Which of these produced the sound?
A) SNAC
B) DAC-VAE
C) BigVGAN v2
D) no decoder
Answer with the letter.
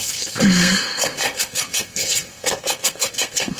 A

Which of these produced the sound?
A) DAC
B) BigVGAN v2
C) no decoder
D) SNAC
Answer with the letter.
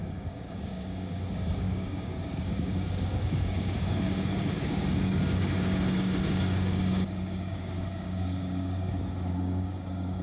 A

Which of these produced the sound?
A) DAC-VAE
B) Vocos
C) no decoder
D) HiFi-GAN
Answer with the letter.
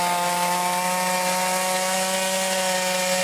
C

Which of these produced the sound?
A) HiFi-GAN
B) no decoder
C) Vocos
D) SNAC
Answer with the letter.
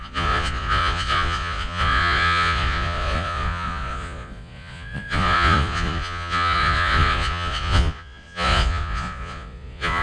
C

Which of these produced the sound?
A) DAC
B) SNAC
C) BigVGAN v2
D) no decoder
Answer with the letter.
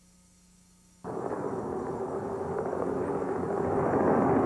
A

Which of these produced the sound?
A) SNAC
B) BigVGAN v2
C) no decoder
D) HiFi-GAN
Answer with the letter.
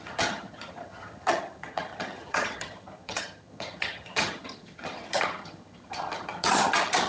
D